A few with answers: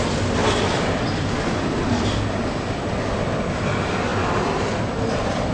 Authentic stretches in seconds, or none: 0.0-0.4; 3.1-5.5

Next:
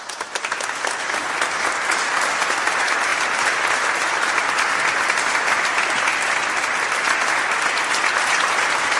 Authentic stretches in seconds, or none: 0.0-9.0

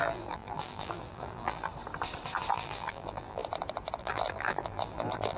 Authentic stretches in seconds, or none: 1.7-2.5; 3.4-4.0

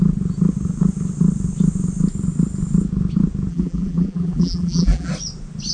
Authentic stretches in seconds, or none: 0.0-3.5; 5.1-5.7

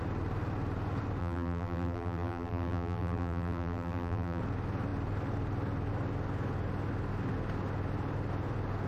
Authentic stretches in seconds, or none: 0.0-1.2; 4.4-8.9

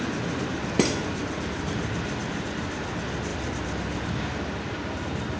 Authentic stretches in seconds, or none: 0.0-1.2; 1.7-3.3; 4.7-5.4